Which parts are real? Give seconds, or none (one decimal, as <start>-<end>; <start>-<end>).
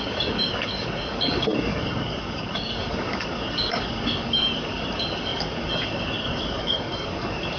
none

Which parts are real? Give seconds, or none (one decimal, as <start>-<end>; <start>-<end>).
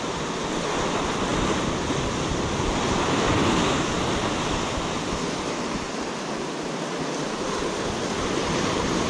0.0-8.4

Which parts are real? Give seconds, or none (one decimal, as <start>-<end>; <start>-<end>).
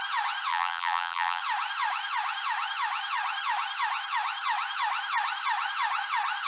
0.0-0.5; 1.4-6.5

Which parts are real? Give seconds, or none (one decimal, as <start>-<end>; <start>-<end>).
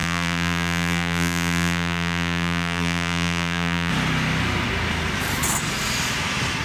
3.9-6.6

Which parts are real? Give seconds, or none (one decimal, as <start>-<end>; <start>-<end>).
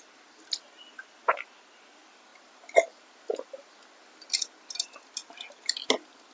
0.0-6.3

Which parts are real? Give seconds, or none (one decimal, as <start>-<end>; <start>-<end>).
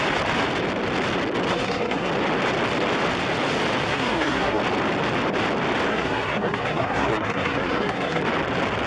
0.0-1.5; 2.1-3.9; 4.6-5.9; 8.2-8.9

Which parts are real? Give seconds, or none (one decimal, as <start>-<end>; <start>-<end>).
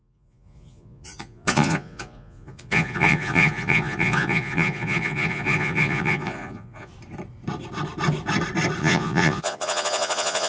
6.9-8.8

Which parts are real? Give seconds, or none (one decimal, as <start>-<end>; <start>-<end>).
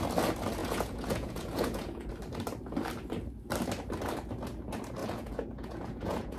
0.0-0.6; 2.1-5.0